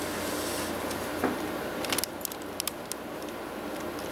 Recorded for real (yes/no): yes